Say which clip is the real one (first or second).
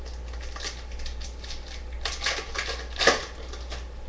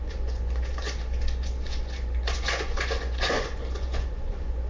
first